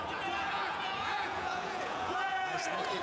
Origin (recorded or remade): remade